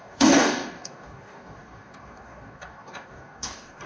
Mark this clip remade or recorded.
remade